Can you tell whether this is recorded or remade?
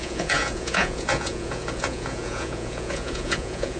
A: remade